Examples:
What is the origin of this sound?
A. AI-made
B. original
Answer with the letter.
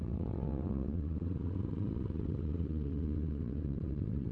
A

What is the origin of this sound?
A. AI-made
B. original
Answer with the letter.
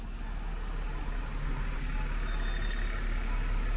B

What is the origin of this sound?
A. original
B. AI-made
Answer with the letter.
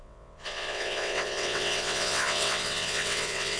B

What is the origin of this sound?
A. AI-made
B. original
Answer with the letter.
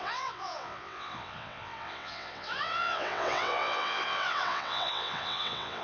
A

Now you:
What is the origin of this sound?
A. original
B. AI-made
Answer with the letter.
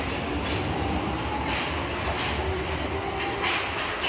A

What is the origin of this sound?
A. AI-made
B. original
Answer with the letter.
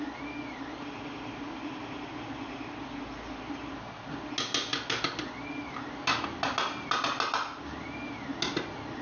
B